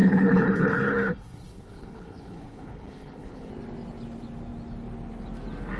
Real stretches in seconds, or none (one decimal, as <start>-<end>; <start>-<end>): 3.5-5.8